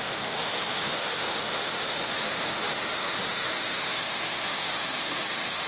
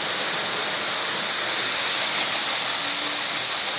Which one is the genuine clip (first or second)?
second